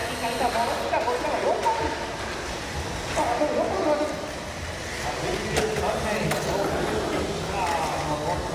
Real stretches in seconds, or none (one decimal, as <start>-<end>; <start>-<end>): 0.0-8.5